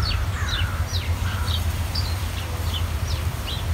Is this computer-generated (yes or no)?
yes